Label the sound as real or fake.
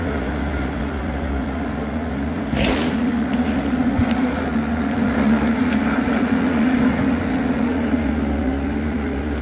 fake